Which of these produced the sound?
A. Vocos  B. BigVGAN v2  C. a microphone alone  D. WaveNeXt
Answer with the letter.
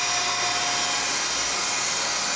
C